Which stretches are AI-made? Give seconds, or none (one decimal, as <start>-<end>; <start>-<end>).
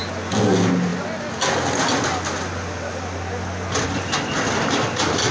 none